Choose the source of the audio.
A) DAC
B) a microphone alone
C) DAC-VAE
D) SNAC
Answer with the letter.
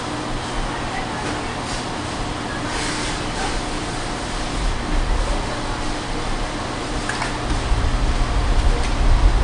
B